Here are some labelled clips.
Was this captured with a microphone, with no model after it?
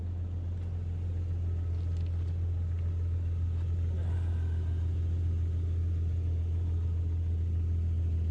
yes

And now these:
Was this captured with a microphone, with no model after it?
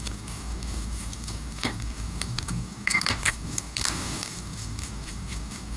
no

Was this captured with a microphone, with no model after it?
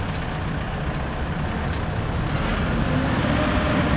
yes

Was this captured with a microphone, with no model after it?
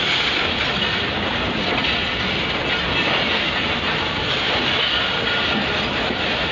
yes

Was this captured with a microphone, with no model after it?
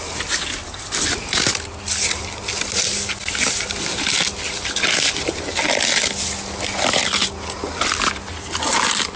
yes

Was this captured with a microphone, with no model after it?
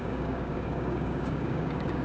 no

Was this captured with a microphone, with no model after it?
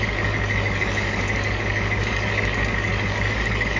no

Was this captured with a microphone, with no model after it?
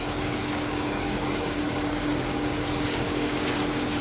no